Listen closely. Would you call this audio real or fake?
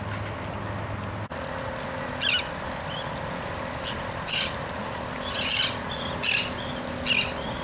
real